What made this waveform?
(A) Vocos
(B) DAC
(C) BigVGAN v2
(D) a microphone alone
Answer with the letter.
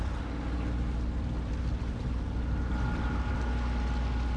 D